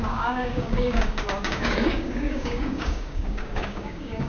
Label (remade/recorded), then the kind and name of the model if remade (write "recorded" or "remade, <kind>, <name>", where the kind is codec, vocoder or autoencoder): remade, codec, DAC